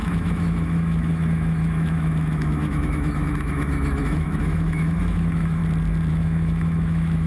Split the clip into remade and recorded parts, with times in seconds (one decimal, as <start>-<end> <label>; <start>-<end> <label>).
0.0-5.6 remade; 5.6-6.1 recorded; 6.1-7.3 remade